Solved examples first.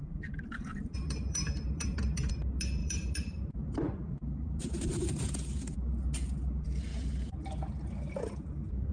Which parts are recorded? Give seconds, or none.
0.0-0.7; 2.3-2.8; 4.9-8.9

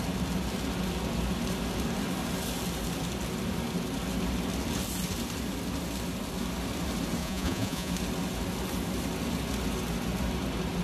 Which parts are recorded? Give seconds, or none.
0.0-7.2; 7.9-10.8

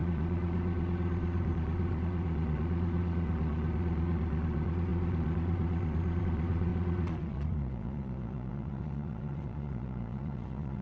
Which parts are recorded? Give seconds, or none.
none

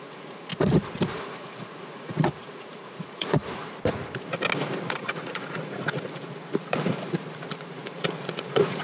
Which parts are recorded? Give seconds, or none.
0.5-1.2; 3.6-5.0